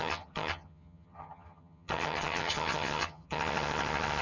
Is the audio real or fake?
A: fake